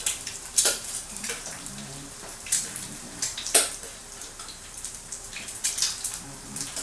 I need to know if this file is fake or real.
fake